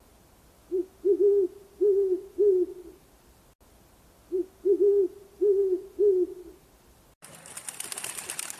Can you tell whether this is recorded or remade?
recorded